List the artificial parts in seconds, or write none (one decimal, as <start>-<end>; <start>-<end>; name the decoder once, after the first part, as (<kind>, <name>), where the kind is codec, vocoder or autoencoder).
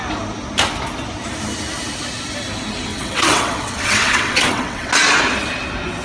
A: 2.9-4.9 (vocoder, WaveNeXt)